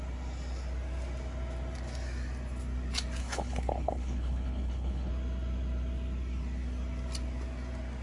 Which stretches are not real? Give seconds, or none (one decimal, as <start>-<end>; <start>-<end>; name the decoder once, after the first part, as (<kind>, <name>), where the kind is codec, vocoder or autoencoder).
3.2-5.1 (codec, HILCodec)